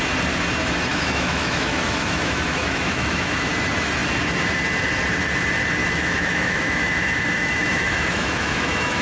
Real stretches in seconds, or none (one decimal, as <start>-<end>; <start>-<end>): 0.0-0.9; 3.5-5.8